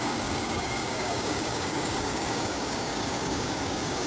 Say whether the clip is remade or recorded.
remade